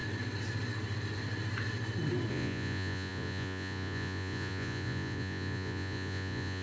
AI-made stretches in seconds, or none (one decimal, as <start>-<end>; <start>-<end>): 2.3-6.6